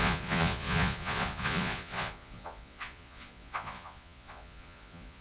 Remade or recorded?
remade